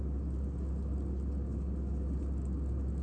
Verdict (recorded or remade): recorded